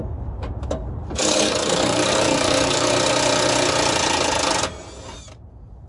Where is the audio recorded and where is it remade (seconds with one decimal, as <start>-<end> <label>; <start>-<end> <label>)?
0.0-1.1 recorded; 1.1-2.9 remade; 2.9-5.9 recorded